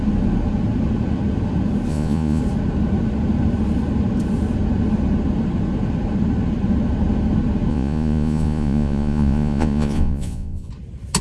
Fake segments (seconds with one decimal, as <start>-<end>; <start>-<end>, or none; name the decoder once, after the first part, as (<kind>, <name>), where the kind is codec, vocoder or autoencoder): 1.9-2.4 (vocoder, Vocos); 7.7-10.7